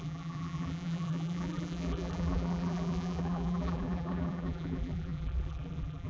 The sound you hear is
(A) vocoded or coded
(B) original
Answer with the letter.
A